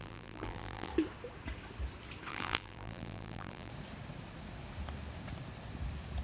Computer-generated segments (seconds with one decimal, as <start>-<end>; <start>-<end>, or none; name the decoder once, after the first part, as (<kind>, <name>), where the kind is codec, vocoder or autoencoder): 0.0-0.9 (vocoder, BigVGAN v2); 2.3-3.7